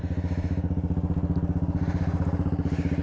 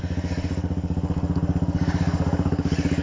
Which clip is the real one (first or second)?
first